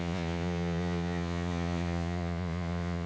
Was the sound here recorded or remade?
remade